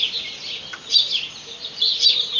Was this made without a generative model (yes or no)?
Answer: yes